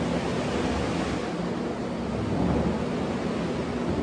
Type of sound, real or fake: real